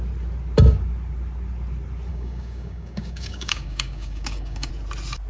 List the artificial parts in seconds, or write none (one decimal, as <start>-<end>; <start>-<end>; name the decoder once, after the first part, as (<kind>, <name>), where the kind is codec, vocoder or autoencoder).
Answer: 2.1-4.7 (codec, DAC)